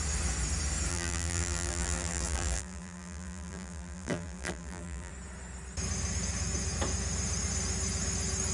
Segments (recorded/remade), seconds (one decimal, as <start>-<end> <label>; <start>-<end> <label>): 0.0-0.9 recorded; 0.9-5.1 remade; 5.1-8.5 recorded